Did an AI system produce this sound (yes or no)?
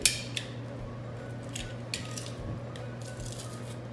no